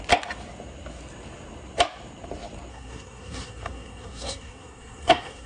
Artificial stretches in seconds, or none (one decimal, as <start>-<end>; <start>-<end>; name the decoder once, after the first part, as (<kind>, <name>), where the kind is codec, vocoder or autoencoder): 2.7-5.5 (codec, SNAC)